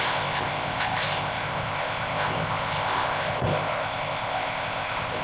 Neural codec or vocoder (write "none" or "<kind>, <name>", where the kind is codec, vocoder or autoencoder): codec, ZipCodec